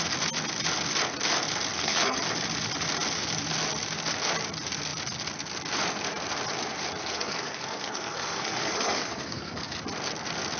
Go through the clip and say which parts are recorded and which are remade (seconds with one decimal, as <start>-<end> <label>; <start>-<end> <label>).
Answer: 0.0-1.7 recorded; 1.7-2.2 remade; 2.2-7.0 recorded; 7.0-9.8 remade; 9.8-10.6 recorded